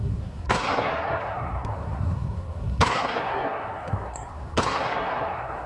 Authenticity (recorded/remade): remade